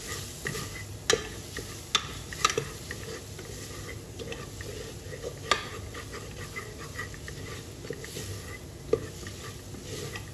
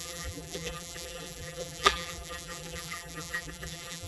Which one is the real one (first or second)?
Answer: first